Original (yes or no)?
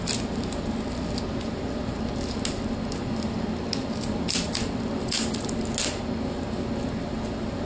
yes